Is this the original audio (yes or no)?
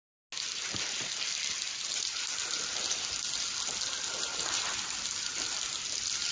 yes